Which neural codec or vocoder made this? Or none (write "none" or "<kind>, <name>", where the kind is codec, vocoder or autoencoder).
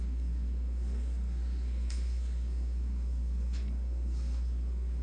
codec, SNAC